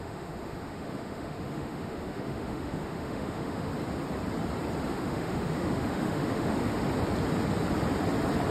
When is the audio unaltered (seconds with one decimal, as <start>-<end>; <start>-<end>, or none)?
3.7-4.8; 6.7-8.5

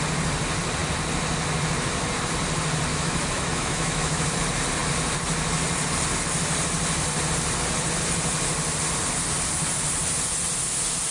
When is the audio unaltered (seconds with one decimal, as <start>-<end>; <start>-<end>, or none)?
0.0-2.9; 4.3-11.1

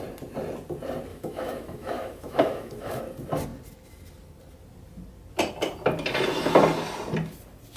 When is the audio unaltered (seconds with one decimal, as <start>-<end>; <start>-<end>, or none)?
0.0-1.1; 3.0-7.8